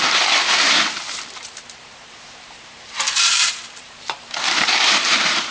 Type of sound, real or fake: fake